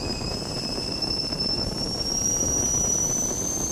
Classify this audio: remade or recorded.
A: remade